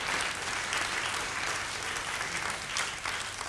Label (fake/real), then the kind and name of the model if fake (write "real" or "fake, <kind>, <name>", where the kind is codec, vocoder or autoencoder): real